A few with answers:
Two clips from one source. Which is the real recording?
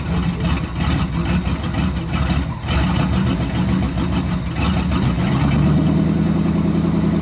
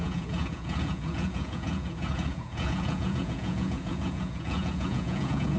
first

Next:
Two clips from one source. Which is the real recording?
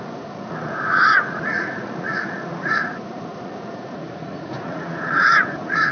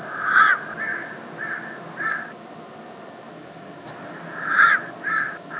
second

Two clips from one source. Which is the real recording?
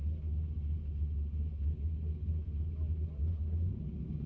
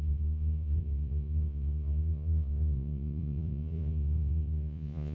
first